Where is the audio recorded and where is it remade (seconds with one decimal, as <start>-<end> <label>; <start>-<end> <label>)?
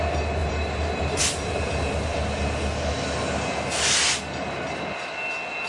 0.0-0.4 recorded; 0.4-1.2 remade; 1.2-5.7 recorded